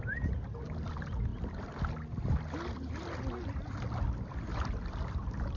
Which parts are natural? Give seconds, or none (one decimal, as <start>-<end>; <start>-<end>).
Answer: 0.0-5.6